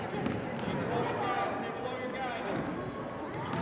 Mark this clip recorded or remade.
recorded